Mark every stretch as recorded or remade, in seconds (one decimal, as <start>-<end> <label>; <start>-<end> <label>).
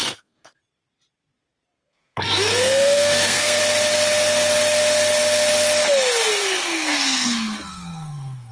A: 0.0-0.6 remade; 0.6-1.7 recorded; 1.7-3.6 remade; 3.6-6.4 recorded; 6.4-8.5 remade